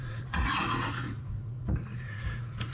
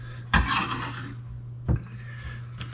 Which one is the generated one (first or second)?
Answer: first